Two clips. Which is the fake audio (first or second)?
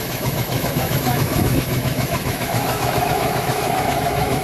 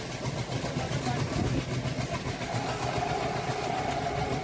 first